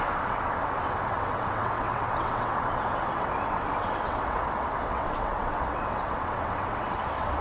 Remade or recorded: remade